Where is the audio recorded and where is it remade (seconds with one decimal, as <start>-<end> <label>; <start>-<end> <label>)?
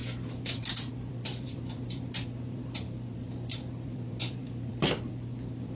0.0-0.6 recorded; 0.6-5.8 remade